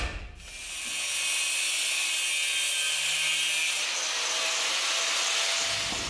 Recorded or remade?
recorded